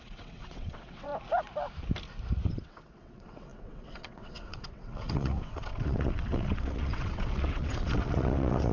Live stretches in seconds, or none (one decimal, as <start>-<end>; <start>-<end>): 1.1-2.5